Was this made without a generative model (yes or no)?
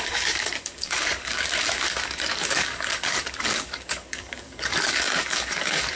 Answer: no